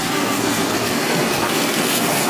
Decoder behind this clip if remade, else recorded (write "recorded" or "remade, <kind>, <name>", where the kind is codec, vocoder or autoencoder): remade, codec, SNAC